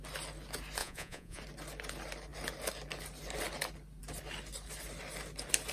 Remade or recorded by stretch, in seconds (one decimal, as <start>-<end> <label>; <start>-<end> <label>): 0.0-0.8 recorded; 0.8-1.4 remade; 1.4-5.7 recorded